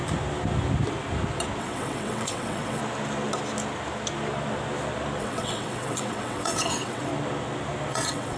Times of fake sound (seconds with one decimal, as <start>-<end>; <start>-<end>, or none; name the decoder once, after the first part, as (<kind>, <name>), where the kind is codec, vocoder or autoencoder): 1.6-2.8 (vocoder, WaveNeXt); 5.2-7.1; 7.9-8.4